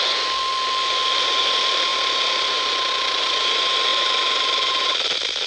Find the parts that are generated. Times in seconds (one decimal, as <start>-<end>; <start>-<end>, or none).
0.0-5.5